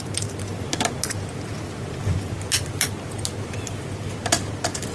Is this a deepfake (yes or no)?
no